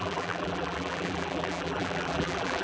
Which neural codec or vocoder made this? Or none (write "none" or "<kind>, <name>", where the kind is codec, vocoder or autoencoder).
vocoder, BigVGAN v2